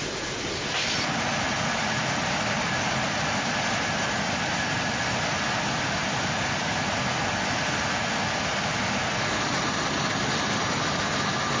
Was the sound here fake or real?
real